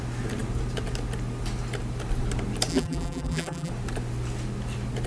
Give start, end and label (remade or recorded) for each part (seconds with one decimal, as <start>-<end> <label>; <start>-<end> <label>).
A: 0.0-2.7 recorded; 2.7-3.7 remade; 3.7-5.1 recorded